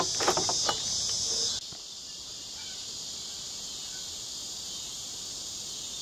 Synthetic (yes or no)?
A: no